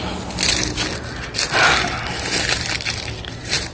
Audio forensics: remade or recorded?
recorded